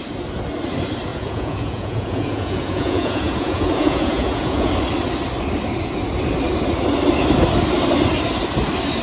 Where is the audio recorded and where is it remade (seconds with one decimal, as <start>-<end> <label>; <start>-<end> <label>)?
0.0-1.1 recorded; 1.1-4.7 remade; 4.7-9.0 recorded